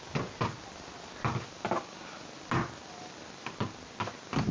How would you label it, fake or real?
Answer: real